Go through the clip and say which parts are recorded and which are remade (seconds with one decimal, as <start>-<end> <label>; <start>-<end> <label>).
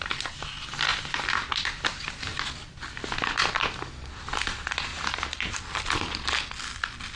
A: 0.0-4.9 recorded; 4.9-5.8 remade; 5.8-7.2 recorded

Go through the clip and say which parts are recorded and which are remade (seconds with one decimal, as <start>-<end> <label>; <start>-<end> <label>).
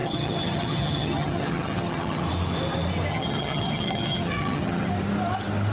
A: 0.0-2.2 remade; 2.2-3.1 recorded; 3.1-4.9 remade; 4.9-5.7 recorded